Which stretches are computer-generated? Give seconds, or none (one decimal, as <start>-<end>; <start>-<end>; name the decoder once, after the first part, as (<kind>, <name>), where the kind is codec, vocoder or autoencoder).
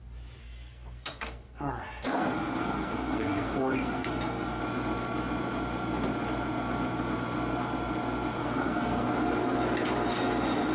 0.4-4.6 (codec, SNAC); 8.4-9.1